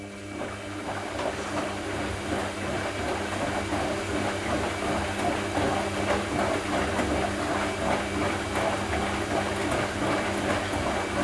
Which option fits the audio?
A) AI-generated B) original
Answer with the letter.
B